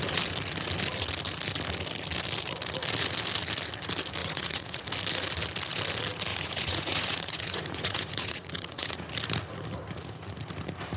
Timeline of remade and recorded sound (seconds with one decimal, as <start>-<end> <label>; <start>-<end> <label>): 0.0-4.2 recorded; 4.2-4.8 remade; 4.8-6.3 recorded; 6.3-9.1 remade; 9.1-11.0 recorded